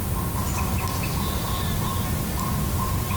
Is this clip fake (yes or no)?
no